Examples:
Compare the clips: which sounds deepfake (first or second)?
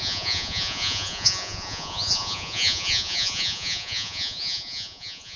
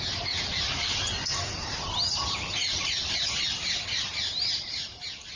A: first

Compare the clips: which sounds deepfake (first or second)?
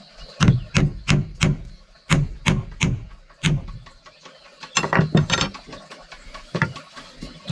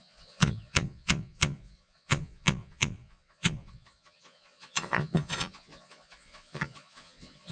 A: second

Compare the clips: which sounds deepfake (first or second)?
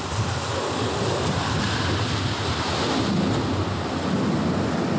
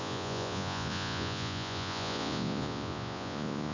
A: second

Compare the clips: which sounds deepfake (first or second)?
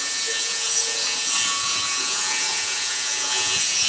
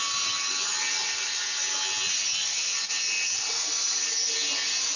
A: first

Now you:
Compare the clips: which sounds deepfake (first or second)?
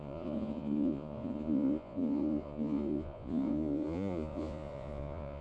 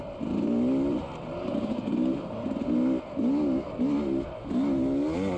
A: first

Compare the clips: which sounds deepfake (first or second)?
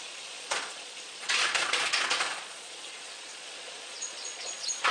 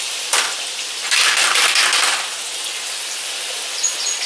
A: first